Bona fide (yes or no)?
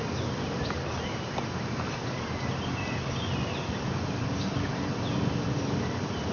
no